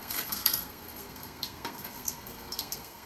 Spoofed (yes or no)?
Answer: yes